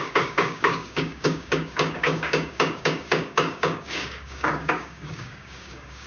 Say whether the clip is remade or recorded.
remade